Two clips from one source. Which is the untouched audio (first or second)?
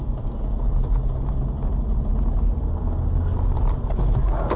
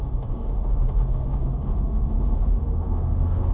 first